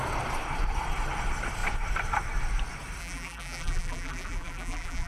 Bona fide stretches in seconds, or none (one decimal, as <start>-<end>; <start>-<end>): 0.0-3.0

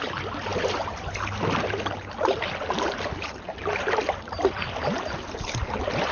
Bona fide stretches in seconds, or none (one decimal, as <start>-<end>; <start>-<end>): 0.0-6.1

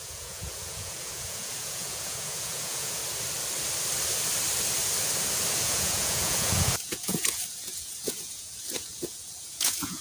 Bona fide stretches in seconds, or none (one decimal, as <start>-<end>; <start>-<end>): 3.0-5.6

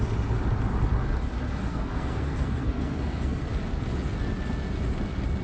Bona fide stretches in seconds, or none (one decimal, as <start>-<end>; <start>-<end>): 0.0-1.7; 3.4-5.4

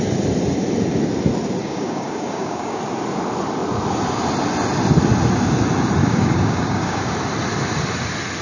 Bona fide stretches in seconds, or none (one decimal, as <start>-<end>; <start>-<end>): 0.0-1.6; 2.8-6.0; 7.1-8.4

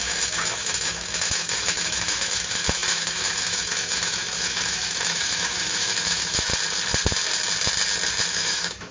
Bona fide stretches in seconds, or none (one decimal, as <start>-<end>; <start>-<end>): 6.5-8.3